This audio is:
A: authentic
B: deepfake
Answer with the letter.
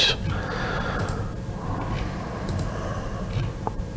A